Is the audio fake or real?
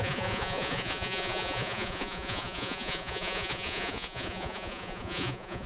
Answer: fake